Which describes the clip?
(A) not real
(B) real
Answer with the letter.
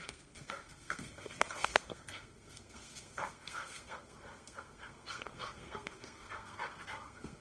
A